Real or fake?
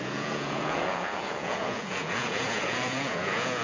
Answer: fake